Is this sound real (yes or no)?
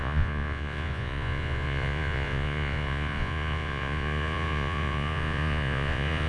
no